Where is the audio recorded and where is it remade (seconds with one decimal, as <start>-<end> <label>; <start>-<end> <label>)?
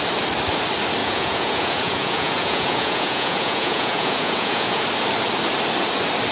0.0-1.0 recorded; 1.0-4.8 remade; 4.8-6.3 recorded